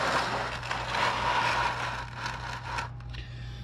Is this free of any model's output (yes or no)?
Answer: yes